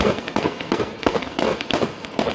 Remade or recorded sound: remade